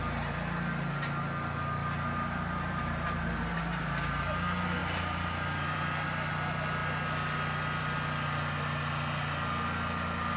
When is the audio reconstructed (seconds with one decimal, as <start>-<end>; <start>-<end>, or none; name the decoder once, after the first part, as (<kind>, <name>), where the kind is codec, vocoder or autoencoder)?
1.8-4.2 (vocoder, BigVGAN v2); 4.8-6.3